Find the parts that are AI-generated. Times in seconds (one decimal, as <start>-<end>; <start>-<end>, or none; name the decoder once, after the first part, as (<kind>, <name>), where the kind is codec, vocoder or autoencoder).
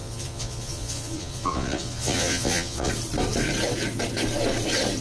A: 0.0-2.9 (vocoder, Vocos)